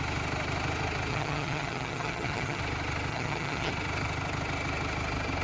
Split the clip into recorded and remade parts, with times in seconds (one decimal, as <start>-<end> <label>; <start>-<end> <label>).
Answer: 0.0-1.1 recorded; 1.1-2.6 remade; 2.6-3.1 recorded; 3.1-3.7 remade; 3.7-5.4 recorded

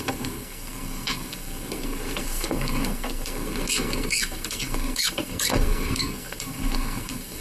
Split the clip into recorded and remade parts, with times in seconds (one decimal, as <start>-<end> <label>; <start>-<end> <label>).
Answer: 0.0-7.4 remade

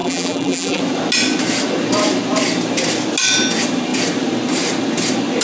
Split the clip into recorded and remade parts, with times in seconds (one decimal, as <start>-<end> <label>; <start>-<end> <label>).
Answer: 0.0-0.8 remade; 0.8-5.4 recorded

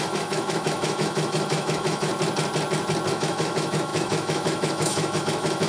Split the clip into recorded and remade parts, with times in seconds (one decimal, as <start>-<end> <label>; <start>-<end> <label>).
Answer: 0.0-2.1 remade; 2.1-3.1 recorded; 3.1-5.7 remade